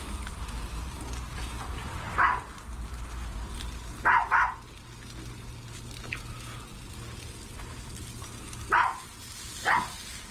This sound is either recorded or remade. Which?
recorded